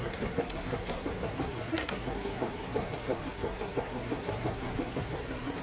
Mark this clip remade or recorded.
remade